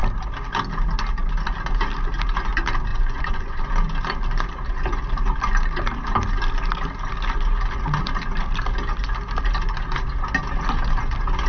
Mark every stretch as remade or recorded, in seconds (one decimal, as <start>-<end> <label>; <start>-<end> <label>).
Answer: 0.0-2.9 recorded; 2.9-3.6 remade; 3.6-11.5 recorded